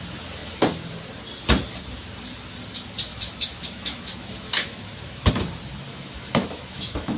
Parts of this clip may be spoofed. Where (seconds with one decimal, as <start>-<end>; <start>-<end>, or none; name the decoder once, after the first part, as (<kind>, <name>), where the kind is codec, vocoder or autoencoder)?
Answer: 3.1-5.3 (autoencoder, DAC-VAE); 5.9-7.2